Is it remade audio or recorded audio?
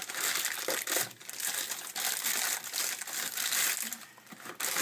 recorded